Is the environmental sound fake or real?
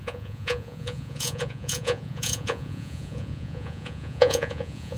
fake